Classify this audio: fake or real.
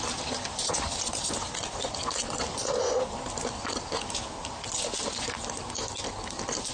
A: real